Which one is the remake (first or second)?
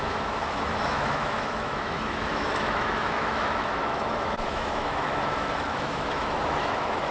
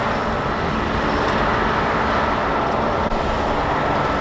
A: first